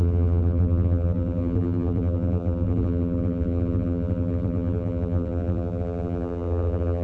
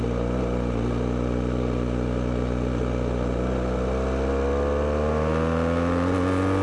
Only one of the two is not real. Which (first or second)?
first